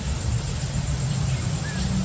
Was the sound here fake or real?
real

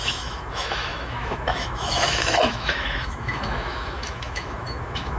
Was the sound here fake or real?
fake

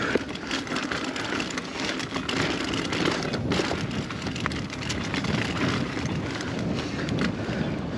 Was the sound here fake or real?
real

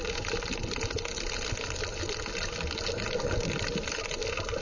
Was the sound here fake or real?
real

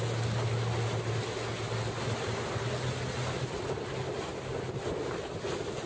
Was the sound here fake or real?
real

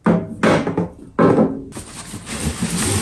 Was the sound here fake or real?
real